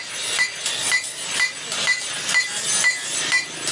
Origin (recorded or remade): recorded